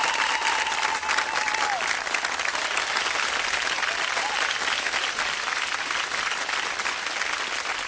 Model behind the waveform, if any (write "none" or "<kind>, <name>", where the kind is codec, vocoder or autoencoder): none